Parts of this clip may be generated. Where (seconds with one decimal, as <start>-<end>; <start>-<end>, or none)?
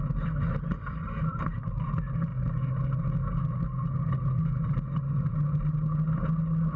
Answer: none